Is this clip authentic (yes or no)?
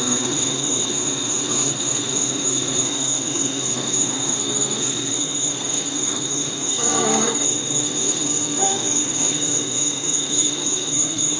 no